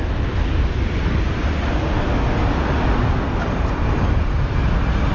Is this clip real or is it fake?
real